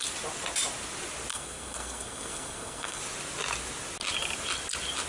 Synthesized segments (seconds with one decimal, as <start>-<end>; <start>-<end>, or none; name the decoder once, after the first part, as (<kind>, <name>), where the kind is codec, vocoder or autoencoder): 1.3-3.0 (codec, SNAC)